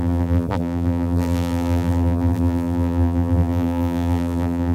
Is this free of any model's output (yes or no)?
no